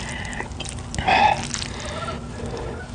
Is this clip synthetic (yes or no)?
no